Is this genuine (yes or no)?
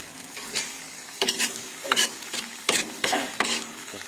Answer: no